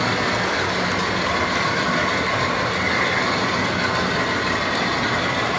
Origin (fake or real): real